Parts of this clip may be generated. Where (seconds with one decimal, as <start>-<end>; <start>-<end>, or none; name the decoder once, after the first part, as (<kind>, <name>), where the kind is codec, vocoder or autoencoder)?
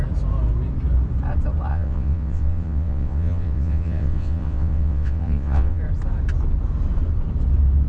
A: 1.7-5.8 (vocoder, WaveNeXt)